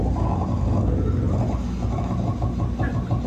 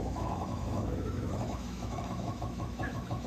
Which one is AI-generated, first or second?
second